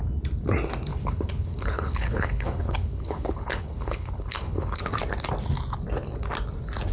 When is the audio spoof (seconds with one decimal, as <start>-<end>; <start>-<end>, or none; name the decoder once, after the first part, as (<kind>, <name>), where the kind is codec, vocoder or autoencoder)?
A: 0.9-4.8 (codec, HILCodec)